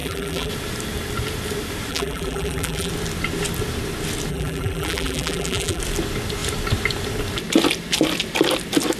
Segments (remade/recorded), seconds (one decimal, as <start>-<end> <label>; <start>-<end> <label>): 0.0-0.5 remade; 0.5-1.9 recorded; 1.9-2.9 remade; 2.9-4.3 recorded; 4.3-5.8 remade; 5.8-9.0 recorded